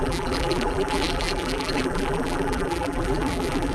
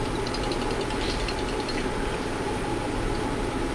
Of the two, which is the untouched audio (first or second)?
second